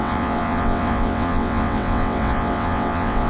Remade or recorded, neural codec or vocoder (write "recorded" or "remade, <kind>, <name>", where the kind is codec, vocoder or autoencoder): remade, vocoder, WaveNeXt